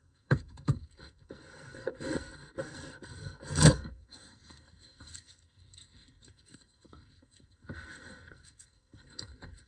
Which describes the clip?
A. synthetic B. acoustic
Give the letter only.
A